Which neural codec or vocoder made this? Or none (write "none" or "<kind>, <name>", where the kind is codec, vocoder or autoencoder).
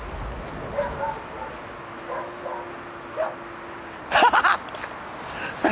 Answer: none